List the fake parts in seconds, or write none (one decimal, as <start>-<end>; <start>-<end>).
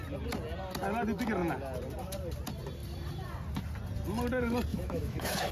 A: 4.7-5.5